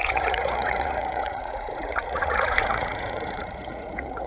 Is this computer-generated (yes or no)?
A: yes